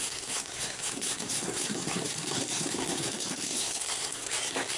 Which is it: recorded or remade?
remade